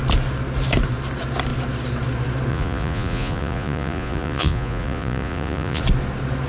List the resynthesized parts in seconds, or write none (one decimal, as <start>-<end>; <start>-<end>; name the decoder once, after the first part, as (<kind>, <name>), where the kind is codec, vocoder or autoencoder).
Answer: 2.5-5.8 (vocoder, Vocos)